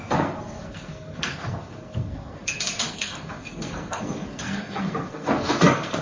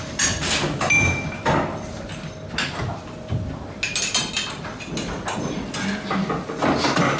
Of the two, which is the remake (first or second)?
first